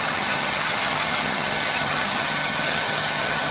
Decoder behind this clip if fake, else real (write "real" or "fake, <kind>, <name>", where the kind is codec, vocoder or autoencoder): fake, vocoder, HiFi-GAN